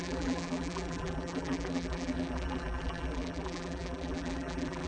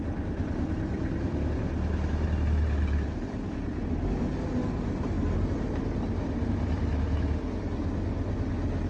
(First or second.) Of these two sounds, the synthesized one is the first